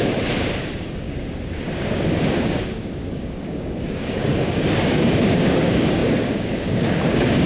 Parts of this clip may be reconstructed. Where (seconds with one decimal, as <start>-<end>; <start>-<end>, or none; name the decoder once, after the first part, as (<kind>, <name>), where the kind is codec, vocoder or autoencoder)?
0.0-7.5 (codec, DAC)